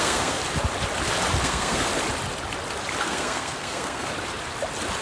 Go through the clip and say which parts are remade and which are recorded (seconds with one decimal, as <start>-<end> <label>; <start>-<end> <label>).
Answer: 0.0-0.4 remade; 0.4-1.4 recorded; 1.4-1.9 remade; 1.9-3.0 recorded; 3.0-4.1 remade; 4.1-5.0 recorded